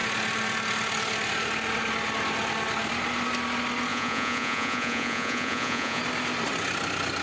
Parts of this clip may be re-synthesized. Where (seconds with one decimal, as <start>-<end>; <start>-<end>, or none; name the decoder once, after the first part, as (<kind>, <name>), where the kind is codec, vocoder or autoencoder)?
3.9-6.0 (vocoder, Vocos)